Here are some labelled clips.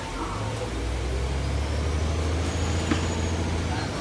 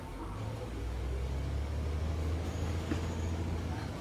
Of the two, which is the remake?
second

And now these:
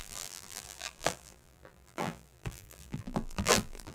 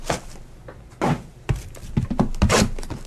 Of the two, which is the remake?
first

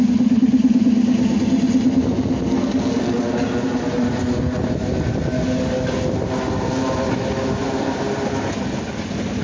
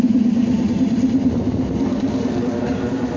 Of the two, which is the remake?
second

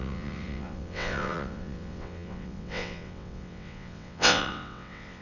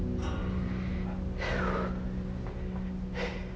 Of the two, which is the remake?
first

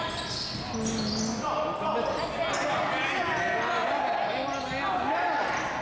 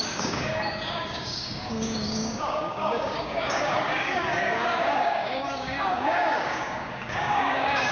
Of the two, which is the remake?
second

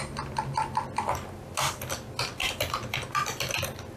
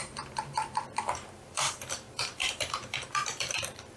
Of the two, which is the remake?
second